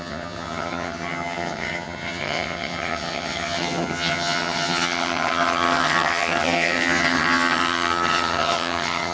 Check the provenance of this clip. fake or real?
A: fake